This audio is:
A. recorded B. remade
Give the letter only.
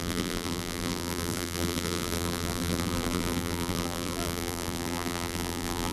B